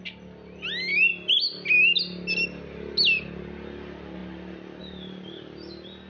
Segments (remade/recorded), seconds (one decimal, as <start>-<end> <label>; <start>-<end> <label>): 0.0-6.1 recorded